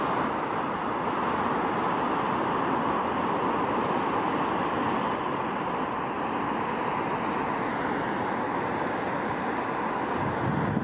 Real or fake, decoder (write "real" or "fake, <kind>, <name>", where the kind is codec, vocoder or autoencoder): real